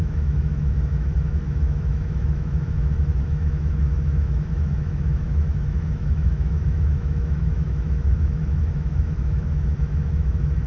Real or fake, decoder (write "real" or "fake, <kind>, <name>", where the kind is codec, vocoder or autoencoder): fake, autoencoder, DAC-VAE